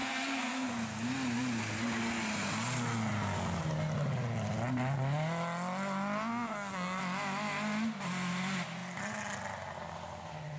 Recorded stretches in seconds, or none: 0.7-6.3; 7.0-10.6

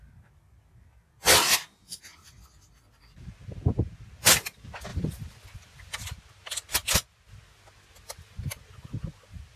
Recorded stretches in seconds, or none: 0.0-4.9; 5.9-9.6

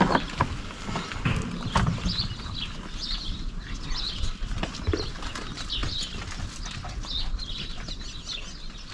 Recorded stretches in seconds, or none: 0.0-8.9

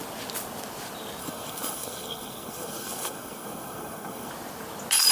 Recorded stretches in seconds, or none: 0.0-1.2; 4.3-5.1

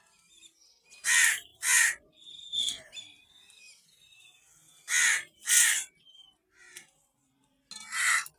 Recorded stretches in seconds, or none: 0.0-8.4

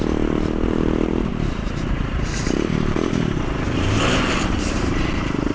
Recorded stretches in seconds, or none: 0.0-1.3; 4.6-5.5